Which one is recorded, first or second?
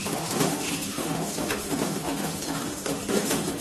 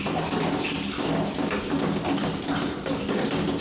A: second